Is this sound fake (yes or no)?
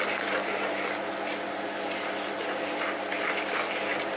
no